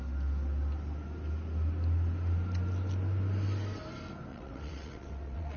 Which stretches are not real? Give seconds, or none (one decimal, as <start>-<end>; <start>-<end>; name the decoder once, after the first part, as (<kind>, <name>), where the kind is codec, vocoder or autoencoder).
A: 4.3-5.6 (vocoder, WaveNeXt)